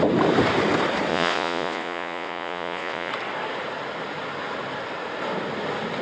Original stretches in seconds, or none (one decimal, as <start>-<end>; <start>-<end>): 0.0-1.1; 3.1-6.0